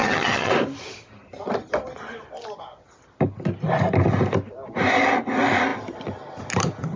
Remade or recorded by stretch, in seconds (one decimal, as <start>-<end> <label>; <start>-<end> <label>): 0.0-0.5 remade; 0.5-7.0 recorded